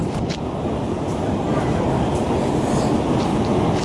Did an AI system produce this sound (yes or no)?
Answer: no